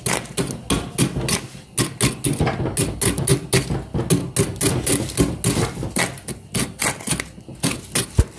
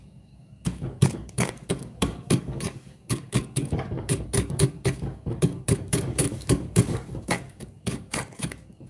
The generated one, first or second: second